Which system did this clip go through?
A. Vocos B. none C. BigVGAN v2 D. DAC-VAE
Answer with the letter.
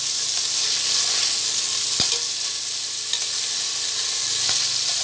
B